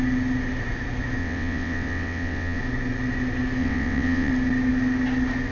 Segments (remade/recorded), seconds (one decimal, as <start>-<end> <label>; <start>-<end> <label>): 0.0-1.2 recorded; 1.2-2.6 remade; 2.6-3.6 recorded; 3.6-4.3 remade; 4.3-5.5 recorded